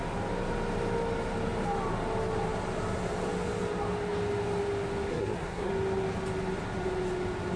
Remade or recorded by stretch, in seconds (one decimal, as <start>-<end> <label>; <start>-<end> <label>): 0.0-5.1 recorded; 5.1-5.7 remade; 5.7-7.6 recorded

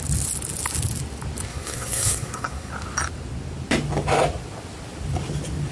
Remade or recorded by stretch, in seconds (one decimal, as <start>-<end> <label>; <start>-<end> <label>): 0.0-1.5 recorded; 1.5-2.7 remade; 2.7-5.7 recorded

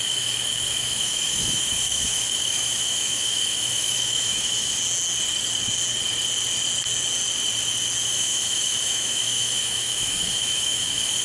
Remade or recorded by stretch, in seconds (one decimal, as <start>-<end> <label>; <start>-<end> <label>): 0.0-4.8 remade; 4.8-8.0 recorded; 8.0-11.2 remade

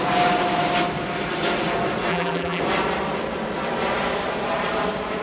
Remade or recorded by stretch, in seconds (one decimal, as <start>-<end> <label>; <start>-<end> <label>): 0.0-2.1 recorded; 2.1-2.6 remade; 2.6-5.2 recorded

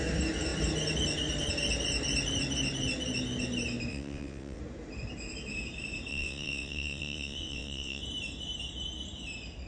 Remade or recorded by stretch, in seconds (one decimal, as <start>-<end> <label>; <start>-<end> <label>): 0.0-3.9 recorded; 3.9-4.6 remade; 4.6-6.1 recorded; 6.1-8.0 remade; 8.0-9.7 recorded

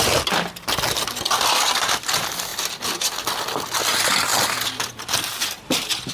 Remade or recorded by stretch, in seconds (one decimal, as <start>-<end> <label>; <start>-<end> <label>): 0.0-6.1 recorded